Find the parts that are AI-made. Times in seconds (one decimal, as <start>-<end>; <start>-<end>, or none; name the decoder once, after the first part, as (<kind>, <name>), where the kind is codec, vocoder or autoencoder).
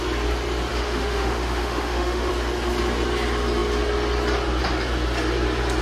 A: 0.7-2.3 (autoencoder, DAC-VAE)